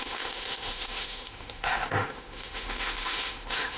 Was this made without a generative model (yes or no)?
no